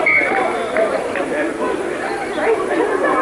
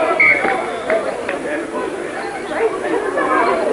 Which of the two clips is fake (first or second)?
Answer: first